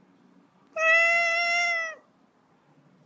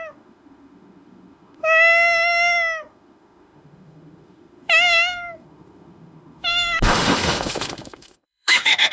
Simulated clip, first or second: second